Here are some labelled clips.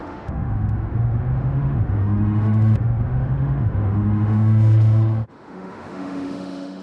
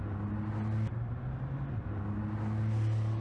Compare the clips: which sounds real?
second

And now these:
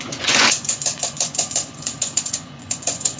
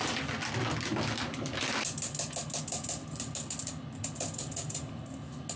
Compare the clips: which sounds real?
second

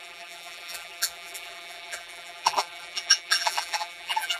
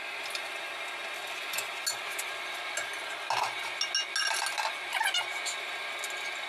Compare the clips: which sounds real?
second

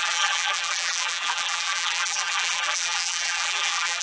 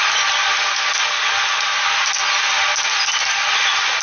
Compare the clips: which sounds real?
second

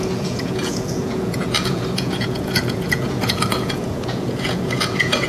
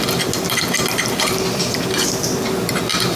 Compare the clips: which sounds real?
second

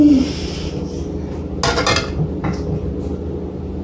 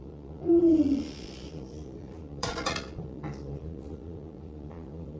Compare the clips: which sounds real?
first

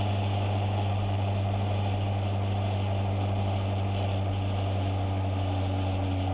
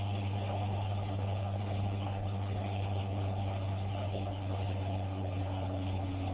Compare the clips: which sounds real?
first